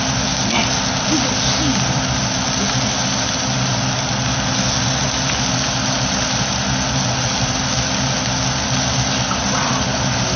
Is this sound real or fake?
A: real